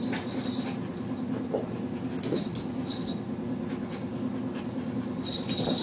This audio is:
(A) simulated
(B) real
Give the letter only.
B